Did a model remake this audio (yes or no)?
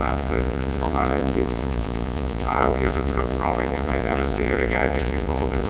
yes